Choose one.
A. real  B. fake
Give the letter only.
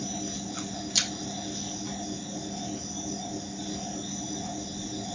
A